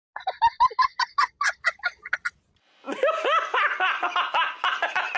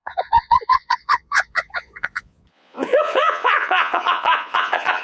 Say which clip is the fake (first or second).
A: second